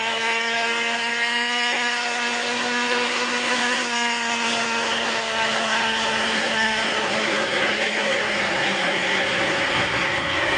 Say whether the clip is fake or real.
fake